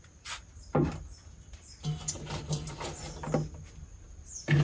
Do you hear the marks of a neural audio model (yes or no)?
no